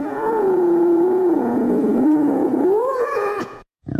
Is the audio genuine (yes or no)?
no